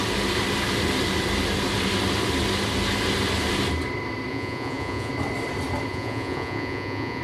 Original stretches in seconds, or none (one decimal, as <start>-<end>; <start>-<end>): 0.0-4.3; 5.1-5.9